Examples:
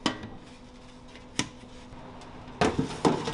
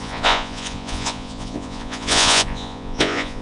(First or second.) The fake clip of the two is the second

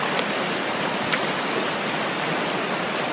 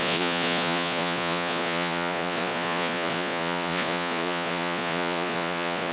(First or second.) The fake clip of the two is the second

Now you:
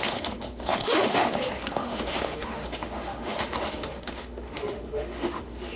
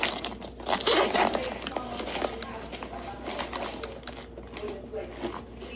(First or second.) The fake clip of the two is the first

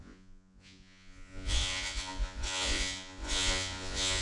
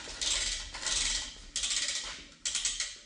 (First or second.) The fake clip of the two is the first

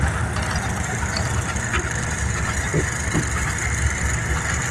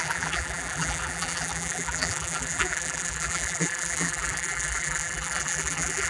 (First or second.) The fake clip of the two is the second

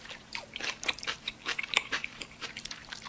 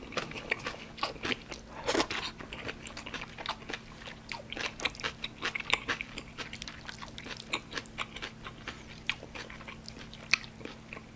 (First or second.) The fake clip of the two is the first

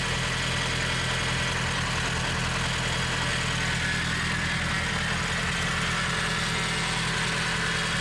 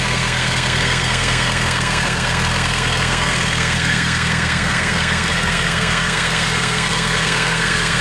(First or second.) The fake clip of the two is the second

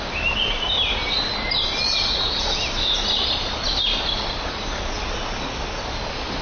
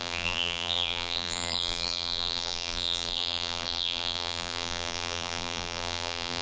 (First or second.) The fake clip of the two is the second